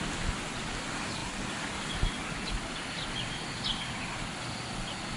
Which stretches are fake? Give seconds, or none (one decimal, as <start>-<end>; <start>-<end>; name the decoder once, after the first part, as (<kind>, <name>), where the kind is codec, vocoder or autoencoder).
none